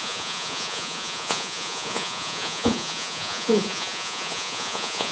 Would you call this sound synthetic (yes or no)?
yes